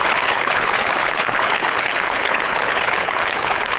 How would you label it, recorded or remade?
remade